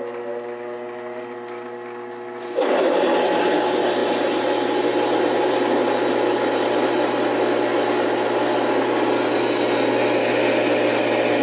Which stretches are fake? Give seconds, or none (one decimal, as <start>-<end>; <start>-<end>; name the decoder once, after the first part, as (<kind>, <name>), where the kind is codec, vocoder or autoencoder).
none